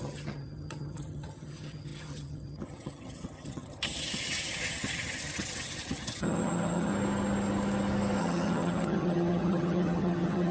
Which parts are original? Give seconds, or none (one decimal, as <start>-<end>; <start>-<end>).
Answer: 6.9-8.2